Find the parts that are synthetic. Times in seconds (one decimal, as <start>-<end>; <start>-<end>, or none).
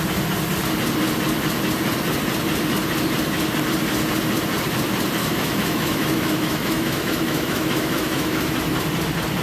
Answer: 5.2-8.6